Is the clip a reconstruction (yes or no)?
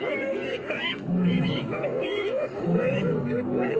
yes